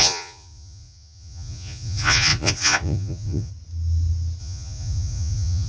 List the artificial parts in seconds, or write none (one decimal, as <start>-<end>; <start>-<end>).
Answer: 0.0-3.5; 4.4-5.7